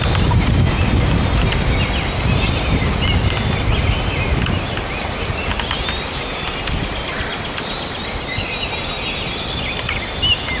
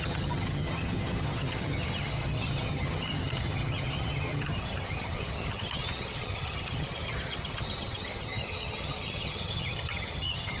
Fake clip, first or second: second